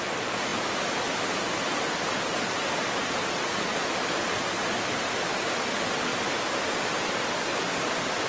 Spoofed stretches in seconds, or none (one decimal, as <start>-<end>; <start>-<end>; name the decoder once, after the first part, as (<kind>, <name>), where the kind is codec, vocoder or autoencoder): none